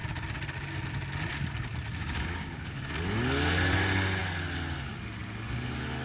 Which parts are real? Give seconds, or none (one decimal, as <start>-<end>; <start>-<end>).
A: 0.0-2.0; 2.9-6.0